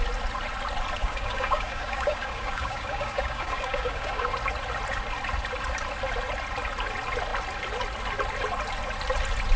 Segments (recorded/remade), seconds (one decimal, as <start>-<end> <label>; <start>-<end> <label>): 0.0-1.0 recorded; 1.0-4.3 remade; 4.3-9.6 recorded